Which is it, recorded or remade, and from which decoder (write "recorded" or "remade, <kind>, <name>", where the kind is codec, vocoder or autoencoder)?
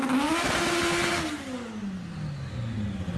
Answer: recorded